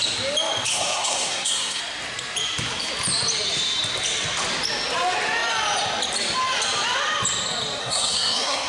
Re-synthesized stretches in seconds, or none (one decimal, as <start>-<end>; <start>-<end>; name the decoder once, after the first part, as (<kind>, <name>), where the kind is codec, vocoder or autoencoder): 0.7-1.8 (codec, SNAC); 7.8-8.7